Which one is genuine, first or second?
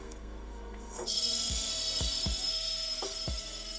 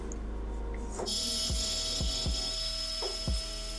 second